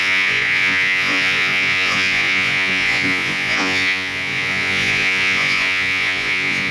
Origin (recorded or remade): remade